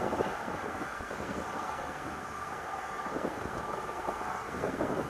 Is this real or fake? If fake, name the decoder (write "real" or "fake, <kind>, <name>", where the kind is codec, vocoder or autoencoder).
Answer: fake, codec, SNAC